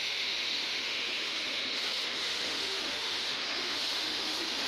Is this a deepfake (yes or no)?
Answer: yes